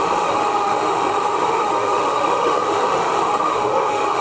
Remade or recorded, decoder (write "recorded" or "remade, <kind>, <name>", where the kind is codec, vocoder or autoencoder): remade, autoencoder, DAC-VAE